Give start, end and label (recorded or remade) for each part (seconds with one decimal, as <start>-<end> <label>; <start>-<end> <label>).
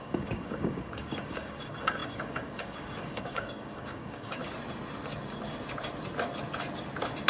0.0-4.4 remade; 4.4-7.3 recorded